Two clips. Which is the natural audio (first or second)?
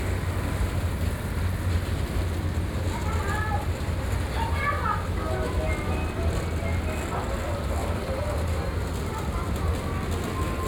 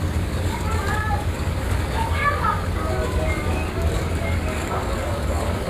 first